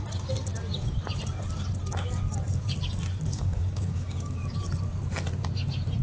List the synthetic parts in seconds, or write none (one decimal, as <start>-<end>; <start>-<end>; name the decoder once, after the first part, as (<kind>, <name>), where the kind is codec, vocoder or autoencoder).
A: 3.3-4.4 (codec, DAC)